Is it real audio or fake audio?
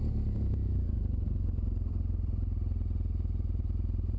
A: real